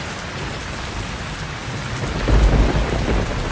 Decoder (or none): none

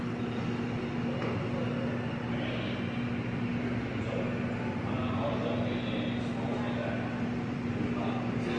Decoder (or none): none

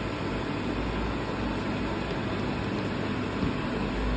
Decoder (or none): none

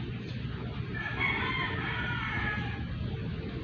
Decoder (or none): none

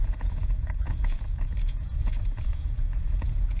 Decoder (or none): vocoder, Vocos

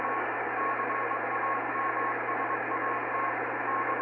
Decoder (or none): none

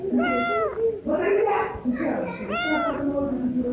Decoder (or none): none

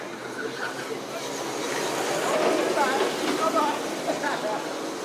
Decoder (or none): none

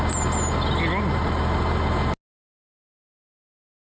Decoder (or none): none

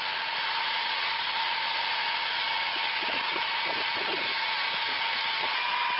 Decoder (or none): none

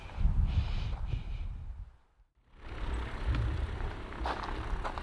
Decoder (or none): none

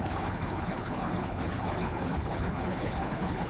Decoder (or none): codec, HILCodec